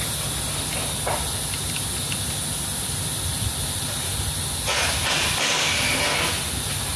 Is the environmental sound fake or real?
real